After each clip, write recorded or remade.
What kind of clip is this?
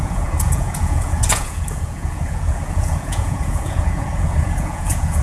remade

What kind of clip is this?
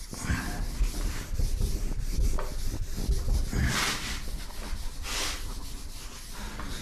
recorded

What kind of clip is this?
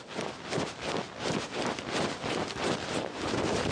recorded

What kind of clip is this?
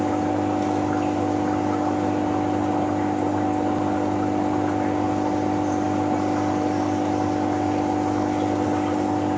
recorded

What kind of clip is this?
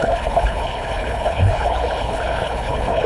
remade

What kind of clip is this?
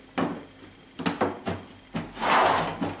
recorded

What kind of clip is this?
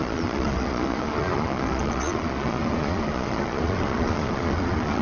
remade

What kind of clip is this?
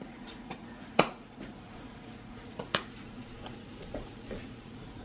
remade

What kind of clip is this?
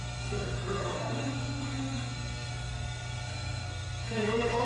remade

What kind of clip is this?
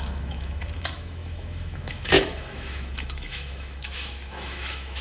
remade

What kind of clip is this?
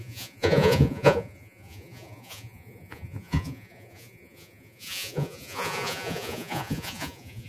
remade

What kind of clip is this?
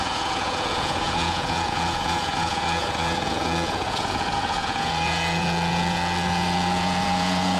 remade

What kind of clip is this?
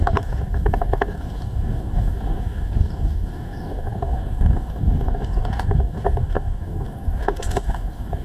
remade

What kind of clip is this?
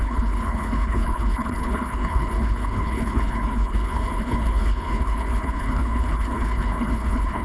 remade